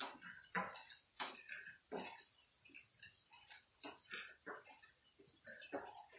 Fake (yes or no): no